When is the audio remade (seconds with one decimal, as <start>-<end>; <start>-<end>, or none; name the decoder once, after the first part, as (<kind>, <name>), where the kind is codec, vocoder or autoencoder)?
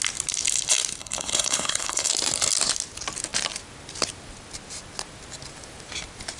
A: 1.0-2.1 (codec, HILCodec)